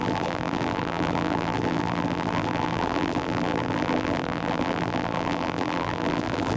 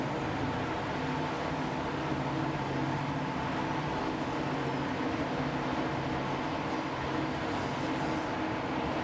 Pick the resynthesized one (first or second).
first